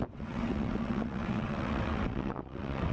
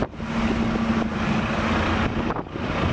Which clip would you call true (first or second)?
second